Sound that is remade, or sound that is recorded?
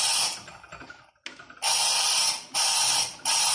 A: recorded